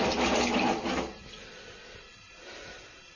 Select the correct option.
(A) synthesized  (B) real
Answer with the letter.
B